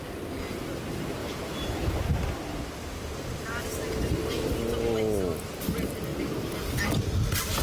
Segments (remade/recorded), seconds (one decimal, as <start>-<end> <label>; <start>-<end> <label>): 0.0-7.6 recorded